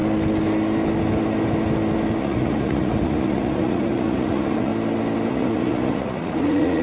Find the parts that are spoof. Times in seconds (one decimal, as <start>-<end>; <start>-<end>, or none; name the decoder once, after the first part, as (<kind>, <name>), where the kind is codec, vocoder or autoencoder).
2.2-4.7 (vocoder, Vocos); 5.3-6.8